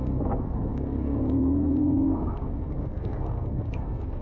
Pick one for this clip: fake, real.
fake